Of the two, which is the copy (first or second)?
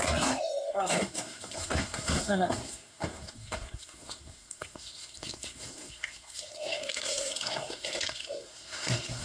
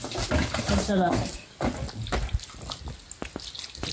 first